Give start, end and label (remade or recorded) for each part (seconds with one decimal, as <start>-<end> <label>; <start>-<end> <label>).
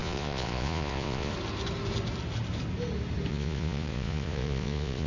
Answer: 0.0-1.3 remade; 1.3-3.3 recorded; 3.3-5.1 remade